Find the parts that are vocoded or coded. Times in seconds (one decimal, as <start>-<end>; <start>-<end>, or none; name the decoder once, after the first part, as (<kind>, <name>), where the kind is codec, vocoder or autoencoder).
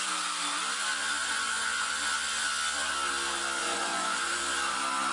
1.2-1.9 (vocoder, Vocos); 3.6-4.4